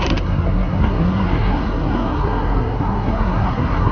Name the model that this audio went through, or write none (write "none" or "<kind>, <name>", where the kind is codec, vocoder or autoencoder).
codec, SNAC